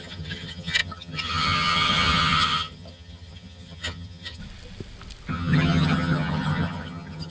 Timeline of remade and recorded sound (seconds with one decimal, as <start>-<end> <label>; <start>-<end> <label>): 0.0-4.4 remade; 4.4-5.3 recorded; 5.3-7.3 remade